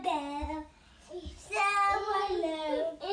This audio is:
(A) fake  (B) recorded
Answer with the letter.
B